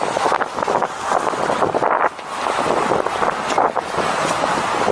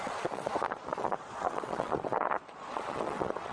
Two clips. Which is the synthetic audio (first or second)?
second